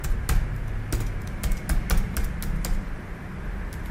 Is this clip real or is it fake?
real